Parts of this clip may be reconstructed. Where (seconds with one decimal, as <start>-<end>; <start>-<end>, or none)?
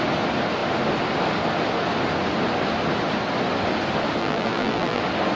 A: 4.2-5.0